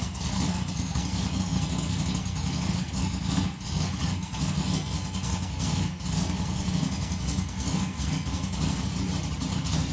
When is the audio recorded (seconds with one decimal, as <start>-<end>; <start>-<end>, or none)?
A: 8.9-9.5